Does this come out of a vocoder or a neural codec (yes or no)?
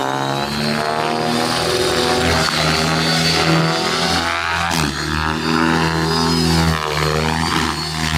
no